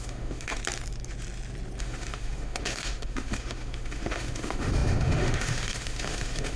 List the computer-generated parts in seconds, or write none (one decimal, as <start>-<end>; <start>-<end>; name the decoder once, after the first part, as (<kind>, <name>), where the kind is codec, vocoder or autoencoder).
0.0-0.6 (autoencoder, DAC-VAE); 1.8-6.6

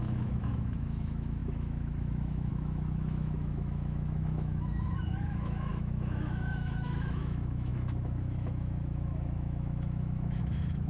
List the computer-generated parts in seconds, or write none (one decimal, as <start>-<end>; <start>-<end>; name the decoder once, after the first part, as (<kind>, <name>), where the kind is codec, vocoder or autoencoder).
0.0-10.9 (autoencoder, DAC-VAE)

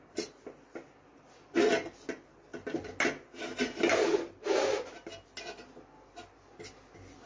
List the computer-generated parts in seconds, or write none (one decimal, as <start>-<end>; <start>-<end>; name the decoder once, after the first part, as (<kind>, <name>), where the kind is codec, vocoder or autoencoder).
none

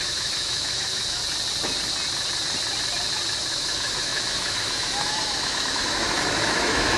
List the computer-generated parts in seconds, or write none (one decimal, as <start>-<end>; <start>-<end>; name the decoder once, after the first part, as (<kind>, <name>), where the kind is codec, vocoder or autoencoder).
0.0-1.2 (autoencoder, DAC-VAE); 3.5-7.0

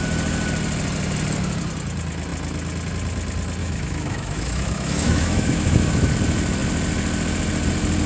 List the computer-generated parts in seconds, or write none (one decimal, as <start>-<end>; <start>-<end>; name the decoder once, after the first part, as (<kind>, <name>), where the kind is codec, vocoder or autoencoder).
3.6-6.1 (autoencoder, DAC-VAE)

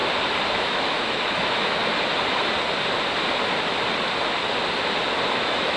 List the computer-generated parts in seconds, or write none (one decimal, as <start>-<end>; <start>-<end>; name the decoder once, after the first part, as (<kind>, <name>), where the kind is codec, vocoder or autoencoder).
0.5-1.8 (autoencoder, DAC-VAE); 5.3-5.8

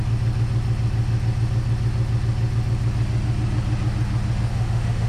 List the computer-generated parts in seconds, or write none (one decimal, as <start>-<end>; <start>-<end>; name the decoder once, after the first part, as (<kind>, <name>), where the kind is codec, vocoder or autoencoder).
4.5-5.1 (autoencoder, DAC-VAE)

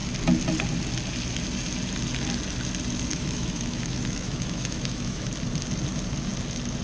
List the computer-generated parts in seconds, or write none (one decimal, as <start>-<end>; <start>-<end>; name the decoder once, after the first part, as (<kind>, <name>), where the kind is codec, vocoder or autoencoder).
3.1-5.3 (autoencoder, DAC-VAE)